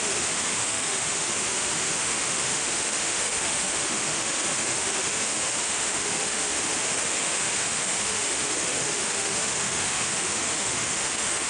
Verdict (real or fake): fake